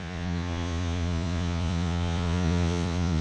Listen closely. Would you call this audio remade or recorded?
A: remade